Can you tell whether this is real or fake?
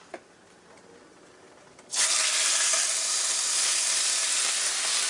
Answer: real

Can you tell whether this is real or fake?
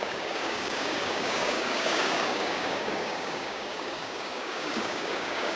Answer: fake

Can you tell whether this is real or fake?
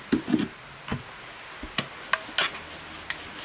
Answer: real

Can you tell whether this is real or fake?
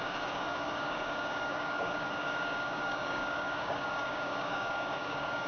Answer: fake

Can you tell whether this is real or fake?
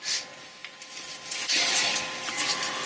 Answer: real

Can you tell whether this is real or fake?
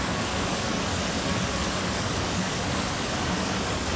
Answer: fake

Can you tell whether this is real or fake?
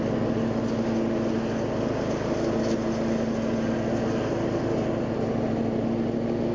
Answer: real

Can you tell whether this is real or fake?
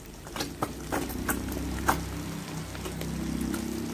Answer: real